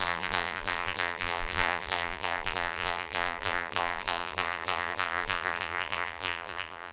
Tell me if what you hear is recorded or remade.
remade